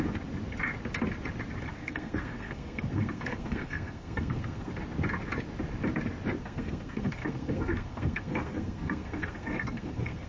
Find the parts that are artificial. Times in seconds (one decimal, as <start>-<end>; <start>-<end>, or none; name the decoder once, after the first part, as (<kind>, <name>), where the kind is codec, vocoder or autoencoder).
1.7-4.7 (codec, SNAC); 6.4-10.3